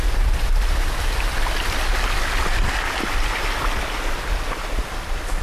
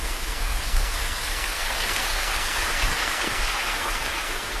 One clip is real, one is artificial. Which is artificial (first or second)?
second